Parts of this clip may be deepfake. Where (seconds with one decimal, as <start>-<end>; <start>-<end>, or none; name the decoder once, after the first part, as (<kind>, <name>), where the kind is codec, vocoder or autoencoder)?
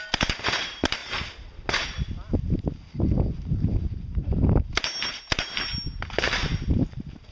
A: none